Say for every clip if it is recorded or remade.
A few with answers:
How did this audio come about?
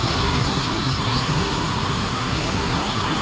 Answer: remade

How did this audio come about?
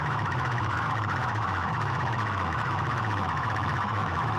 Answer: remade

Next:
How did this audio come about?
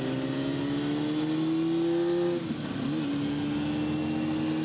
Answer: recorded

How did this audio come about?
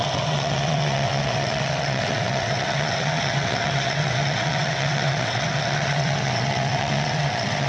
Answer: remade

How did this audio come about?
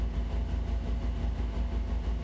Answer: recorded